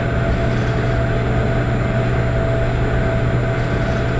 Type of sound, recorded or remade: recorded